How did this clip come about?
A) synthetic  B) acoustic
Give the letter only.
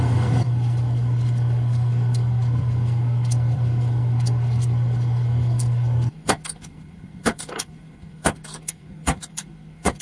A